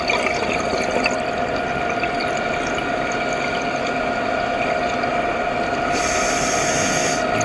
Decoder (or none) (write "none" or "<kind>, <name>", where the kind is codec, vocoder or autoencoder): none